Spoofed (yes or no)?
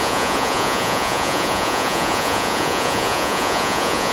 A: yes